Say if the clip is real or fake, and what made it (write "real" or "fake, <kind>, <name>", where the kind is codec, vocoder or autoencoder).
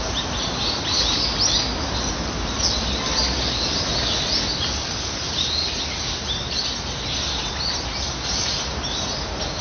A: real